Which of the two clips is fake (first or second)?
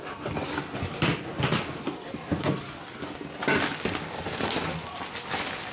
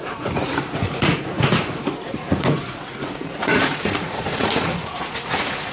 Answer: second